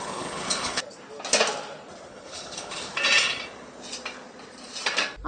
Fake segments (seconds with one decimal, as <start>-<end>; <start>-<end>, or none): 0.0-0.8; 2.1-2.9